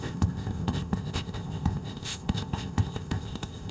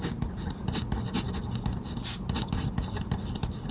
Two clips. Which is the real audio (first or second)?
second